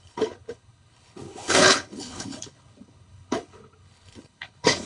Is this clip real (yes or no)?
no